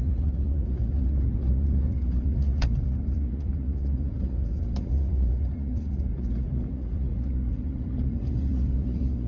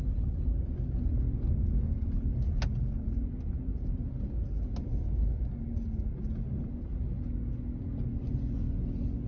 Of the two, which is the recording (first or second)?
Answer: second